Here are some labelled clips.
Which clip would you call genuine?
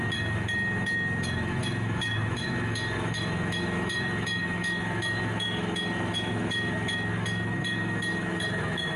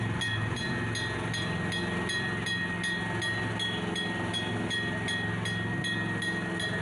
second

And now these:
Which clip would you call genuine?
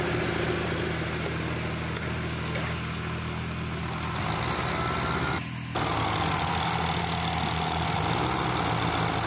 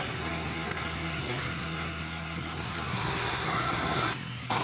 first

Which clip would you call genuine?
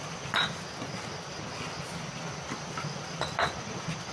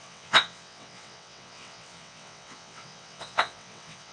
first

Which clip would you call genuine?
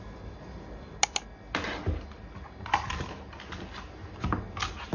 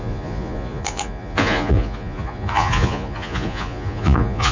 first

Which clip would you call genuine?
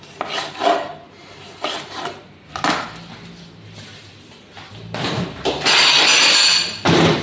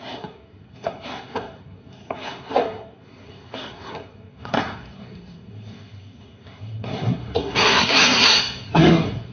first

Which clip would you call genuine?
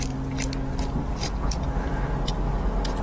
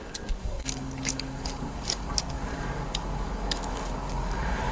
first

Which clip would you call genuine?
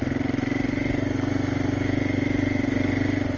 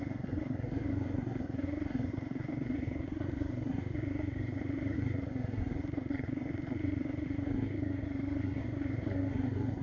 first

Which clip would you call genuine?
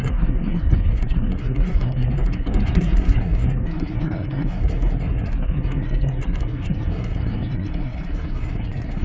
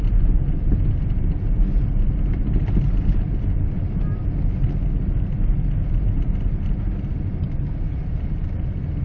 second